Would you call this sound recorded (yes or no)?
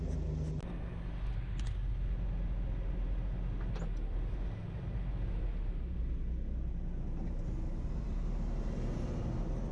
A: yes